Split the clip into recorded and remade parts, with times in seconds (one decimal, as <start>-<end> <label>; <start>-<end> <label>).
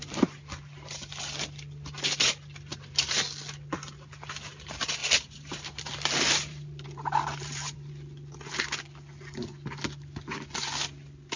0.0-2.7 recorded; 2.7-3.2 remade; 3.2-5.0 recorded; 5.0-7.9 remade; 7.9-11.4 recorded